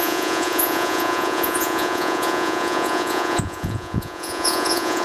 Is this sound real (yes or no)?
no